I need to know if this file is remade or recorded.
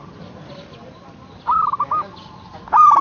recorded